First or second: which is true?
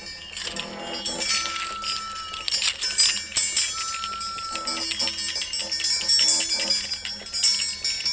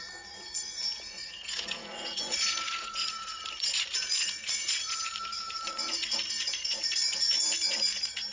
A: first